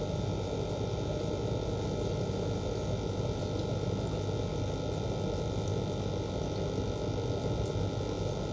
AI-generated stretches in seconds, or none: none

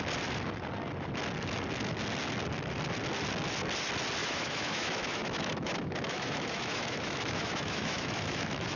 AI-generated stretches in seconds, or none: 4.2-8.8

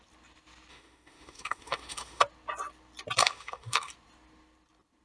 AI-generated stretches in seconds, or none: 0.7-2.2; 3.2-3.9

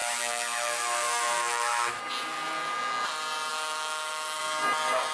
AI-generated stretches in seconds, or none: 0.0-2.0; 3.5-4.4

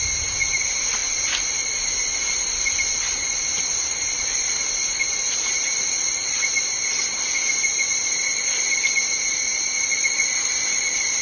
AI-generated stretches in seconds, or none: none

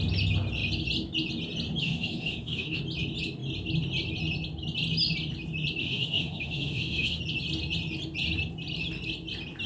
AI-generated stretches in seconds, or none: 1.8-2.8; 5.8-7.2

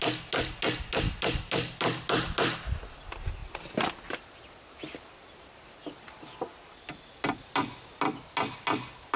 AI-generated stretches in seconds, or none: none

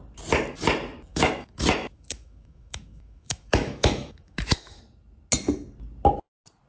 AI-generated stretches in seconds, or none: 1.1-4.8